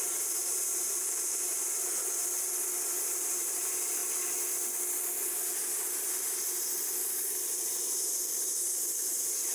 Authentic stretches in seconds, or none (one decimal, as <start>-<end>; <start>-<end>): 1.5-3.3; 4.0-7.1